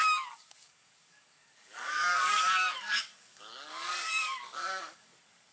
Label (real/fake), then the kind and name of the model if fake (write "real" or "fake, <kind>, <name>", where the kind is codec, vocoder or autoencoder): fake, codec, DAC